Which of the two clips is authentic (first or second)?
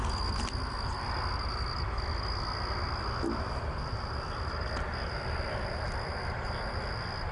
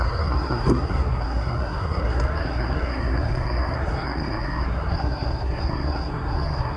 first